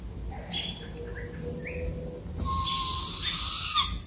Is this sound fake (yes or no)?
no